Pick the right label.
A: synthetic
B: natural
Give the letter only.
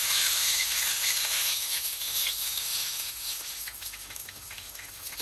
A